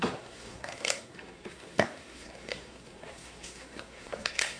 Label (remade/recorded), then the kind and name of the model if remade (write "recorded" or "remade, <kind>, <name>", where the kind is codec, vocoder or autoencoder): remade, codec, SNAC